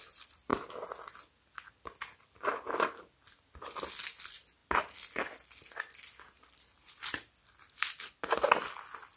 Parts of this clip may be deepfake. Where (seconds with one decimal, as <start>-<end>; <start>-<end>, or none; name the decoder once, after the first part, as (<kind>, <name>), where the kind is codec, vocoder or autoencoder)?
none